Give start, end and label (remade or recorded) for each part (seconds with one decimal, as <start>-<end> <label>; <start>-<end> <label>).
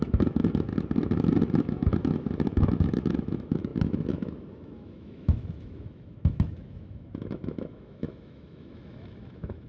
0.0-0.7 remade; 0.7-1.6 recorded; 1.6-9.7 remade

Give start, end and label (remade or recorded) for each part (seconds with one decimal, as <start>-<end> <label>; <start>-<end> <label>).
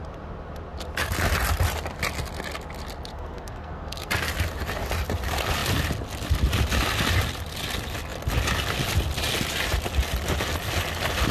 0.0-3.1 recorded; 3.1-4.1 remade; 4.1-11.3 recorded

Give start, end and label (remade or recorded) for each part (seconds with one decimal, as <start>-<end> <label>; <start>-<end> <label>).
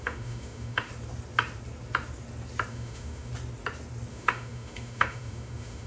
0.0-0.9 remade; 0.9-2.7 recorded; 2.7-3.3 remade; 3.3-4.1 recorded; 4.1-5.9 remade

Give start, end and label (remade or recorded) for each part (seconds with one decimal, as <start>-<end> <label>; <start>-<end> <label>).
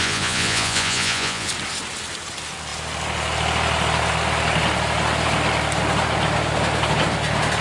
0.0-1.5 remade; 1.5-7.6 recorded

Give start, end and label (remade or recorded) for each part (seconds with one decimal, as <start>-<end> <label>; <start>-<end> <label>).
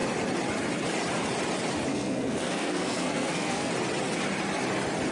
0.0-1.9 recorded; 1.9-3.7 remade; 3.7-5.1 recorded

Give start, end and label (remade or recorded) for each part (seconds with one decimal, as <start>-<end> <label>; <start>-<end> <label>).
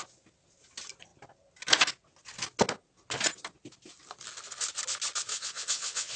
0.0-5.3 recorded; 5.3-6.2 remade